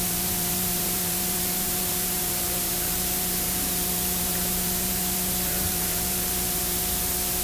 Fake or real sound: fake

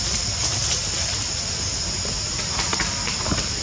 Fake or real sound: real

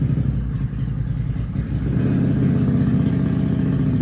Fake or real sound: real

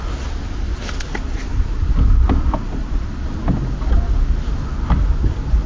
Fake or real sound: real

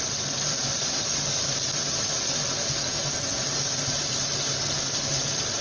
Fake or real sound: real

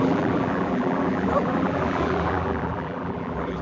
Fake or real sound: fake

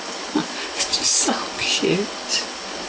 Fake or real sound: real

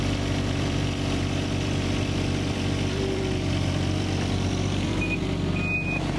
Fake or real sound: fake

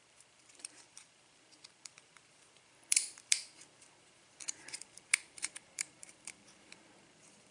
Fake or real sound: fake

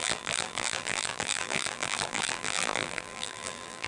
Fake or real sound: fake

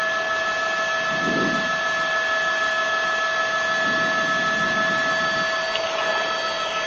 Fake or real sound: real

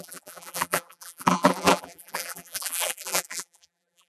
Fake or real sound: fake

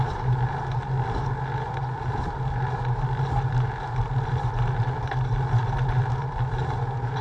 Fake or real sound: real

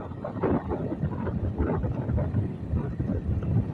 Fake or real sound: real